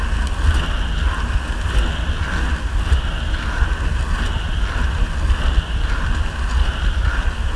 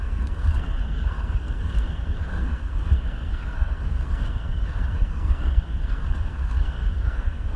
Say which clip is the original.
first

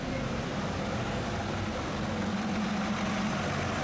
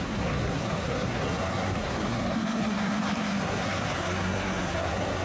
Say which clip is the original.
first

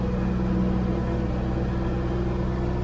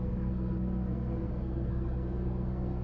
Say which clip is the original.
first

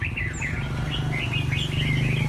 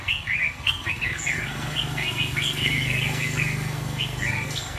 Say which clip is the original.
first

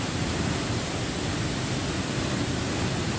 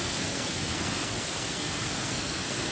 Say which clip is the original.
first